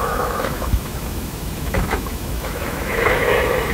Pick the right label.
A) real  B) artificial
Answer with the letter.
B